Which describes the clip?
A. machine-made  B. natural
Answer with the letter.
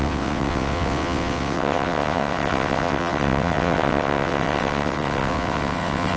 A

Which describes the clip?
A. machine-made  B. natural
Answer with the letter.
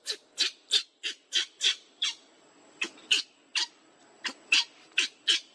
B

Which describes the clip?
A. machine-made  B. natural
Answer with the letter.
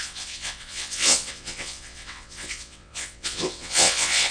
A